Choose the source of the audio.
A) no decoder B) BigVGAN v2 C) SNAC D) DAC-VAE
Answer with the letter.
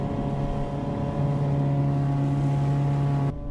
A